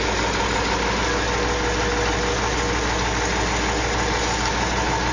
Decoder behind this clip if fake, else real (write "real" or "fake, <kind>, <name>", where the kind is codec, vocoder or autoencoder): real